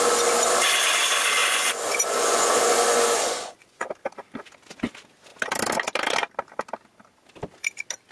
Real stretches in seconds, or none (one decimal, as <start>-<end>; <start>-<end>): 0.0-1.4; 3.9-8.1